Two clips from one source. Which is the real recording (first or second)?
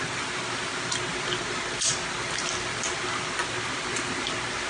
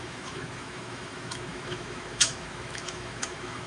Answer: first